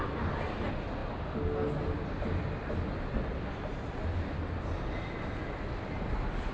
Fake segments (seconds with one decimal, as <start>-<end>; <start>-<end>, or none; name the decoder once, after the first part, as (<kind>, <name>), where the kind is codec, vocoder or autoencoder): none

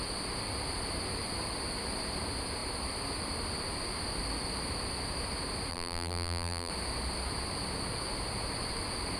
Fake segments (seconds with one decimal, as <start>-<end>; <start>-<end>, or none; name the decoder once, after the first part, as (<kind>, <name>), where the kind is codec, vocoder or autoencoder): 5.7-6.7 (vocoder, BigVGAN v2)